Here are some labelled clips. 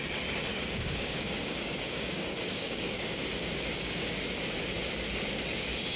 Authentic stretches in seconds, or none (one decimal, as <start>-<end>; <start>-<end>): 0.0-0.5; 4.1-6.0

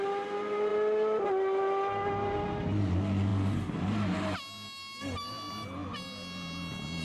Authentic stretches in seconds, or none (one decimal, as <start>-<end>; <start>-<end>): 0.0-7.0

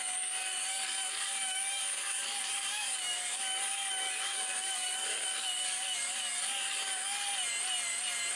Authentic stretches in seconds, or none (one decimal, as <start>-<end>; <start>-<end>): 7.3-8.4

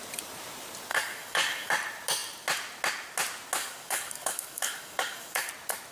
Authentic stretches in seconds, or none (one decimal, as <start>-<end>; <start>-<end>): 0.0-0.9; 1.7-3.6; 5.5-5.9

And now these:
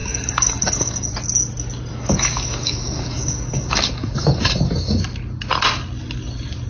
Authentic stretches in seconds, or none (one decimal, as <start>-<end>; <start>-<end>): 1.1-1.9; 5.0-6.7

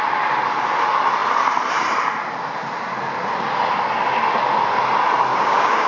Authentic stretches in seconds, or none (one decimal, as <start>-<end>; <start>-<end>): 0.0-5.3

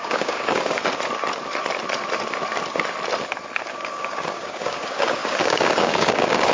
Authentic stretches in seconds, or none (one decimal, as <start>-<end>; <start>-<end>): 0.8-3.7